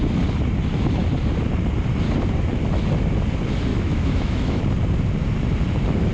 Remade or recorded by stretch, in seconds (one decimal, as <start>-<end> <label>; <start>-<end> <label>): 0.0-3.7 recorded; 3.7-4.6 remade; 4.6-6.1 recorded